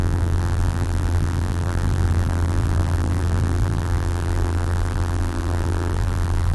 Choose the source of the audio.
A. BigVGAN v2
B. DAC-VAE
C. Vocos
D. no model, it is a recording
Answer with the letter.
A